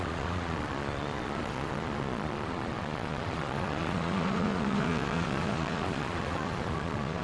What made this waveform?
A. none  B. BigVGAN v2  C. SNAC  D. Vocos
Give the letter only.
D